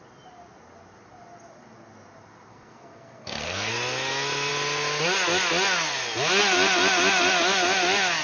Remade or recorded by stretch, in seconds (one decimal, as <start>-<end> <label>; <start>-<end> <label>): 0.0-2.5 recorded; 2.5-3.7 remade; 3.7-8.2 recorded